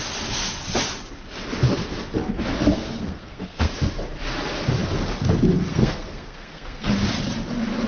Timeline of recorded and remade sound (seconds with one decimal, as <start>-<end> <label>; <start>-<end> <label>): 0.0-2.7 recorded; 2.7-3.7 remade; 3.7-5.7 recorded; 5.7-6.9 remade; 6.9-7.9 recorded

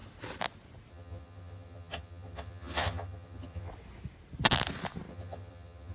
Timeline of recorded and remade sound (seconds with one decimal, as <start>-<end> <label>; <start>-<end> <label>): 0.0-0.9 recorded; 0.9-3.7 remade; 3.7-5.1 recorded; 5.1-5.9 remade